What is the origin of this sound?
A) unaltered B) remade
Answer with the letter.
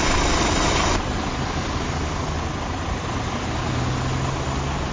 A